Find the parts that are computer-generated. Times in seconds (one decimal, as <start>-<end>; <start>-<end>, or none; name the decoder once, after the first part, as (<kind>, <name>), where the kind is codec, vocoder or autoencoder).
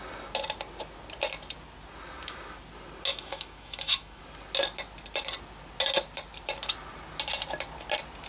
3.1-4.2 (autoencoder, DAC-VAE)